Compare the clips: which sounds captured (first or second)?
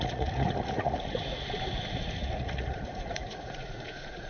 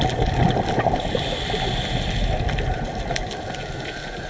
second